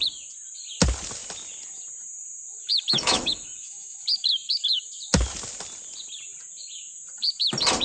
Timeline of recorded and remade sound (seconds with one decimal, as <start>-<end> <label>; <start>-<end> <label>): 0.0-2.6 recorded; 2.6-4.0 remade; 4.0-7.8 recorded